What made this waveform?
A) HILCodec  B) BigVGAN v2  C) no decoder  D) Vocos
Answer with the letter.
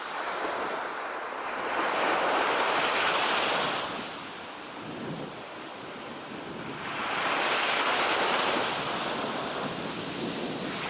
C